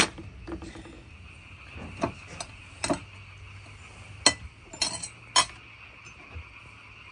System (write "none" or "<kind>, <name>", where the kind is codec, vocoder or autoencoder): none